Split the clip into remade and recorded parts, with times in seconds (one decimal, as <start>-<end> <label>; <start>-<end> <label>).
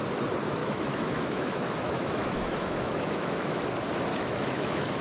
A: 0.0-0.6 recorded; 0.6-3.6 remade; 3.6-4.1 recorded; 4.1-5.0 remade